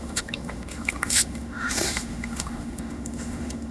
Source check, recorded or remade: remade